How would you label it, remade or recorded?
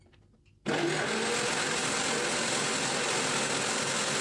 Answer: recorded